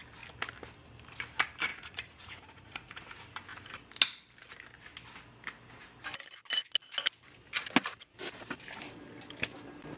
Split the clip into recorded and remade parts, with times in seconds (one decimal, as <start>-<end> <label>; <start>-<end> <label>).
0.0-1.7 recorded; 1.7-3.0 remade; 3.0-10.0 recorded